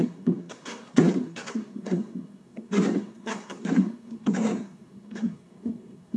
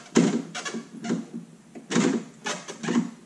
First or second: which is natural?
second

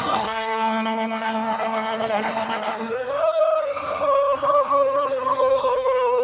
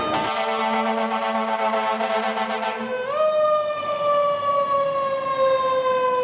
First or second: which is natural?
second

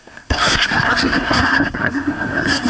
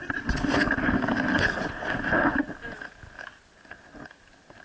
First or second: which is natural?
second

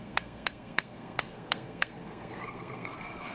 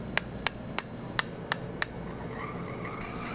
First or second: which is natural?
second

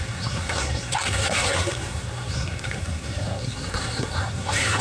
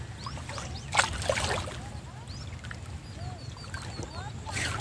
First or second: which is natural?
second